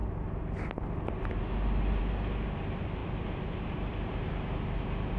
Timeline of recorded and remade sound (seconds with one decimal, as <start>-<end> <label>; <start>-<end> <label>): 0.0-5.2 recorded